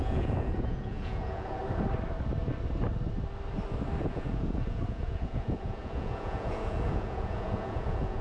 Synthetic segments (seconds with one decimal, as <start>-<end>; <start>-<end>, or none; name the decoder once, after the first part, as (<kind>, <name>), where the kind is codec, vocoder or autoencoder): 0.0-1.6 (vocoder, Vocos); 4.0-8.2